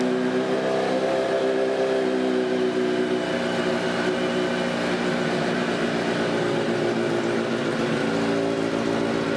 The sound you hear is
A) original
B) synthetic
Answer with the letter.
A